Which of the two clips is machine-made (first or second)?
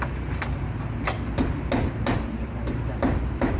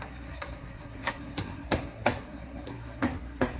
second